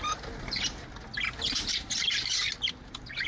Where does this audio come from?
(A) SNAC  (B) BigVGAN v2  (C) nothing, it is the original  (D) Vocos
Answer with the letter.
C